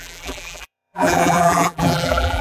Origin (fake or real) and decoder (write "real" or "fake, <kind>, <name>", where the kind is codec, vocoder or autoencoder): fake, vocoder, BigVGAN v2